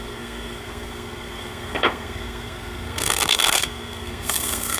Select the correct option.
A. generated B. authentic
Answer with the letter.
A